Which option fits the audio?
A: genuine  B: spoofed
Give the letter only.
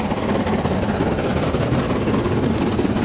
A